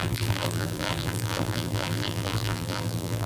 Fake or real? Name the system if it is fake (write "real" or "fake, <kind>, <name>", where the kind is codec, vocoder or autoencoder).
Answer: fake, vocoder, BigVGAN v2